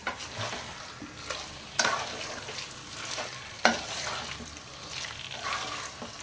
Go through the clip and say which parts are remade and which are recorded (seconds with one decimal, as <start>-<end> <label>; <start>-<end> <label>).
0.0-6.2 recorded